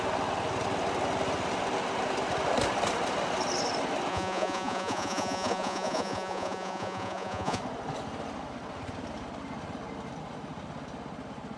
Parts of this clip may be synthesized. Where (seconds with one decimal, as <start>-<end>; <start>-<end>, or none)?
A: 4.1-7.6